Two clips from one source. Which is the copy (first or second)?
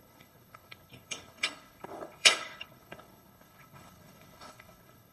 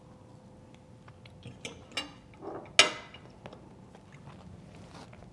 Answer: first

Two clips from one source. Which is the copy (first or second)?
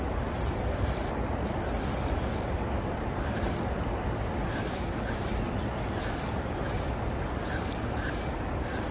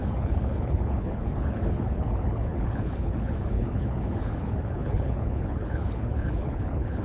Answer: second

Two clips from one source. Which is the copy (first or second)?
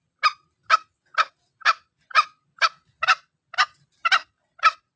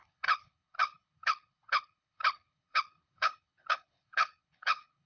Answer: second